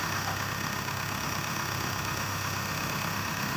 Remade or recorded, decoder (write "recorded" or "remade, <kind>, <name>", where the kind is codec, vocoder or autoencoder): remade, autoencoder, DAC-VAE